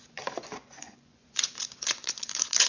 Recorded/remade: remade